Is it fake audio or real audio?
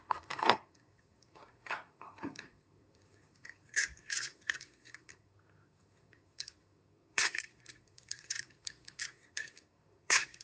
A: fake